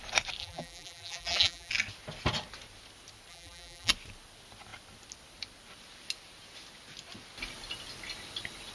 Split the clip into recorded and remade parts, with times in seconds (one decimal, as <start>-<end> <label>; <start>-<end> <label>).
0.0-0.4 recorded; 0.4-1.7 remade; 1.7-3.3 recorded; 3.3-3.9 remade; 3.9-8.7 recorded